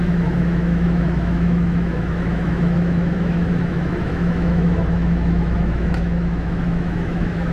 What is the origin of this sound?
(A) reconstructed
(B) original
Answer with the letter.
A